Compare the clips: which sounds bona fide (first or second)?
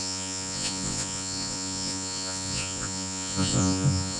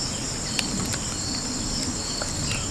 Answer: second